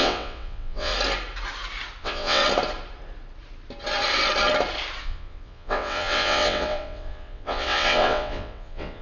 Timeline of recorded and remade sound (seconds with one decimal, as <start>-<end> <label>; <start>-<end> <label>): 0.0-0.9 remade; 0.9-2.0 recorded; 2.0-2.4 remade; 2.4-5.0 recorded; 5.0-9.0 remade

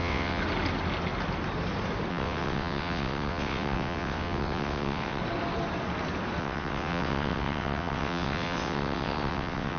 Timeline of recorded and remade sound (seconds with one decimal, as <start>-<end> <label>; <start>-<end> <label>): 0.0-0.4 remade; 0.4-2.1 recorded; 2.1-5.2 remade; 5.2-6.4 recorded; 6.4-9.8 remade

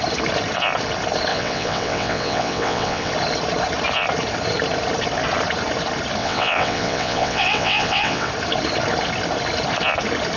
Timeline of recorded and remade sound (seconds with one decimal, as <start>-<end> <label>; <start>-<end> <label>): 0.0-1.3 recorded; 1.3-3.1 remade; 3.1-6.2 recorded; 6.2-8.3 remade; 8.3-10.4 recorded